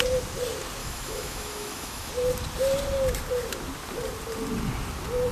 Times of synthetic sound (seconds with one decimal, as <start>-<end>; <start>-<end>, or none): 0.8-2.1